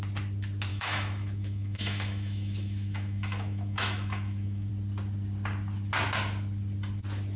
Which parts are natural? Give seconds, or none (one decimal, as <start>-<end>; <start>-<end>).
0.0-0.7; 4.7-7.4